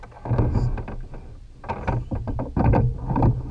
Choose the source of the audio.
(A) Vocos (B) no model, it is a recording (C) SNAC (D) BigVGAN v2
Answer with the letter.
B